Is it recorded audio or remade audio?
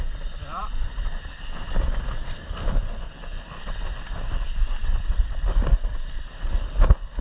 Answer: recorded